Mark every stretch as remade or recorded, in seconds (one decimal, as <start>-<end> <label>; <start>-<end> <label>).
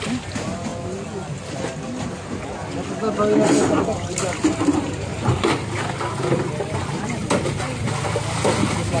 0.0-9.0 recorded